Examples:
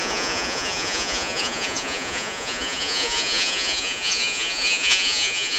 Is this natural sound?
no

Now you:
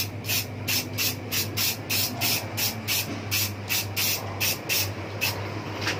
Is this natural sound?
yes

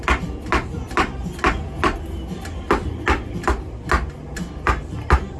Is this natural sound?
yes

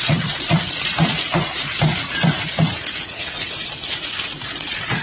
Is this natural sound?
no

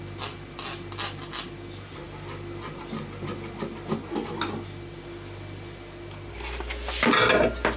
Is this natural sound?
yes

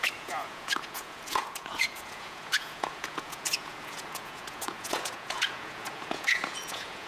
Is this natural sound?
no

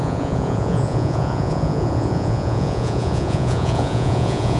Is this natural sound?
no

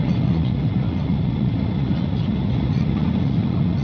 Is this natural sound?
no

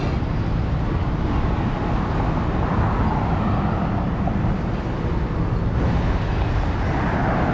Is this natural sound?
yes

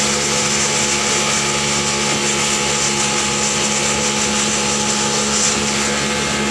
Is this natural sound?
yes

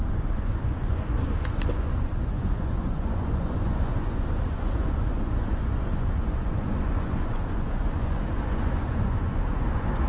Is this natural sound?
no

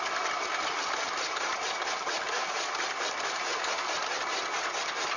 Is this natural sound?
yes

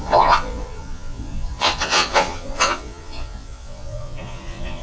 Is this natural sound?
no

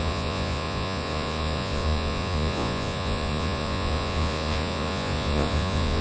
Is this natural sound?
no